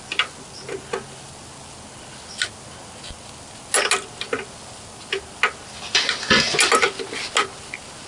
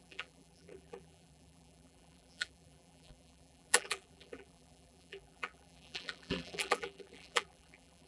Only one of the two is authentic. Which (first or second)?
first